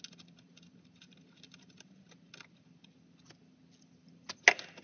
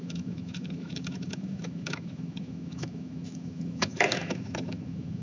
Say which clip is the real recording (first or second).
first